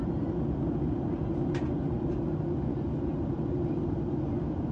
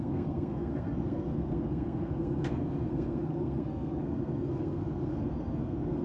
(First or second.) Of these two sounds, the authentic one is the first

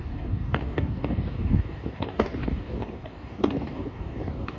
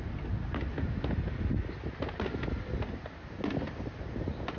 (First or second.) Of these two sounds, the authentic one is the second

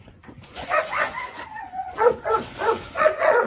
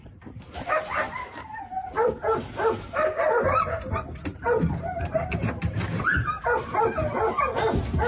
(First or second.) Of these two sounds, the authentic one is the second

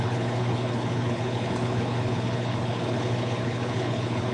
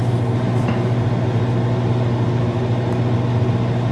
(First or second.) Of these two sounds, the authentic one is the second